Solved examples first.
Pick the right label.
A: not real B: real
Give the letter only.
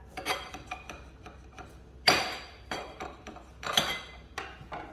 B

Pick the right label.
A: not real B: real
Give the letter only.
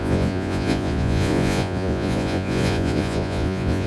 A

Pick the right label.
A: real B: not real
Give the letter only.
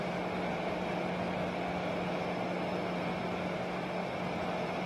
A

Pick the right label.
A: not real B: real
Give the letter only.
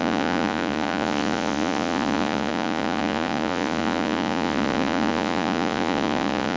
A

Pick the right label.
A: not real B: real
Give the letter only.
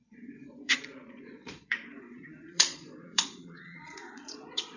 A